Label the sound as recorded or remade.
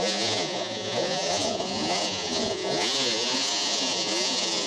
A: remade